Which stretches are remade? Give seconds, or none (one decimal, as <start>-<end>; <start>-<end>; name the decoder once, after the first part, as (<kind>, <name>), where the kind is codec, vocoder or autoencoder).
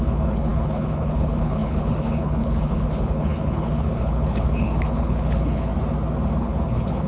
0.0-5.7 (codec, HILCodec); 6.4-7.1